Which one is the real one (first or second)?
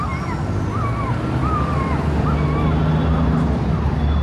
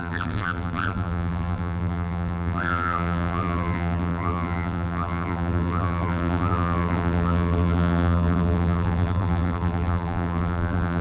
first